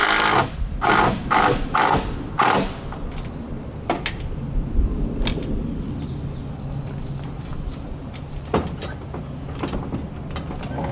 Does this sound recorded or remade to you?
recorded